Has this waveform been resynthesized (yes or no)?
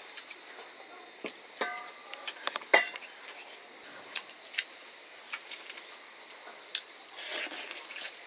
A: no